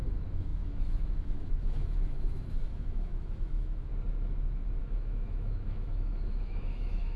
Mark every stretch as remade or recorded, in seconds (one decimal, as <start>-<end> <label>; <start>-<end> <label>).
0.0-3.9 remade; 3.9-4.8 recorded; 4.8-7.2 remade